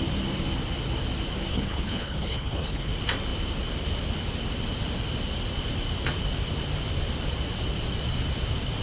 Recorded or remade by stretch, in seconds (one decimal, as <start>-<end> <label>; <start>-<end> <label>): 0.0-1.5 recorded; 1.5-2.9 remade; 2.9-8.8 recorded